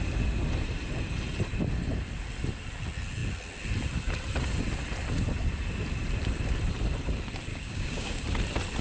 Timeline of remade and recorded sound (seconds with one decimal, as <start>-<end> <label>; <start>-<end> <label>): 0.0-7.5 recorded; 7.5-8.2 remade; 8.2-8.8 recorded